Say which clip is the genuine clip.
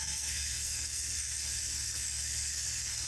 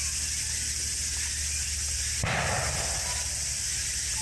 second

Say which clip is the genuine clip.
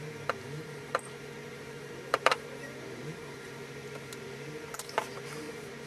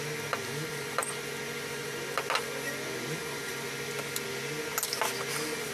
second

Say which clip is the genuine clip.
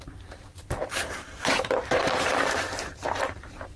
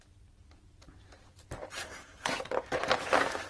second